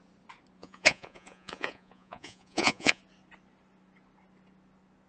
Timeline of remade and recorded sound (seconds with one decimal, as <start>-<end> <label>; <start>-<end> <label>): 0.0-0.6 recorded; 0.6-3.0 remade; 3.0-5.1 recorded

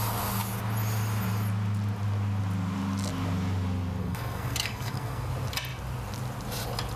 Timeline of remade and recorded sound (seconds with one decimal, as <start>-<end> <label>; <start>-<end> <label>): 0.0-4.0 recorded; 4.0-5.3 remade; 5.3-7.0 recorded

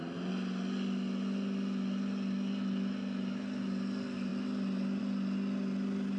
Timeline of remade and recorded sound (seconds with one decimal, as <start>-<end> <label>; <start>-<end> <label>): 0.0-6.2 recorded

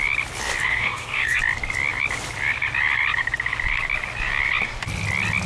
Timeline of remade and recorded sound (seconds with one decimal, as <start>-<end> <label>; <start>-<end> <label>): 0.0-0.7 recorded; 0.7-1.4 remade; 1.4-5.5 recorded